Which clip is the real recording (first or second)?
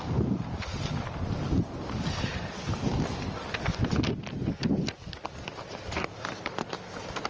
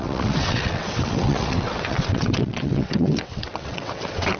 first